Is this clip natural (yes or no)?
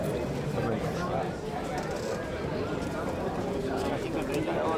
yes